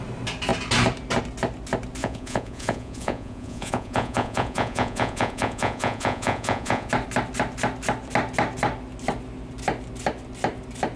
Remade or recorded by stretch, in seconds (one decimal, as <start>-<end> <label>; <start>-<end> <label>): 0.0-2.0 recorded; 2.0-6.9 remade; 6.9-11.0 recorded